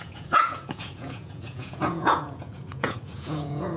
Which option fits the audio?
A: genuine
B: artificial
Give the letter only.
B